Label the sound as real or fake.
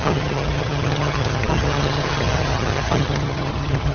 fake